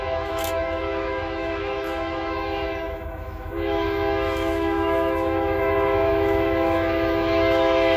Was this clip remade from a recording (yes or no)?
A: yes